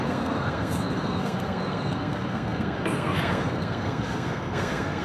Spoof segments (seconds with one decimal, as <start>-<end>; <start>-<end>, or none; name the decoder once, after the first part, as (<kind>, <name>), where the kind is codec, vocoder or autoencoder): 0.0-5.0 (codec, SNAC)